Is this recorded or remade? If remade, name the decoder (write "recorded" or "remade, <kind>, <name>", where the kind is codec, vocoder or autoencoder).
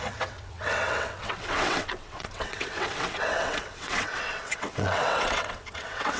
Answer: remade, vocoder, WaveNeXt